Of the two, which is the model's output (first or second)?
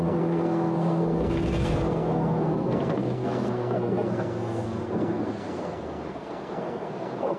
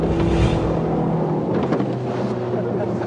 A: first